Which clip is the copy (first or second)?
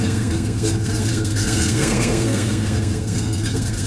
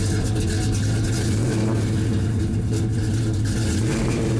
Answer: first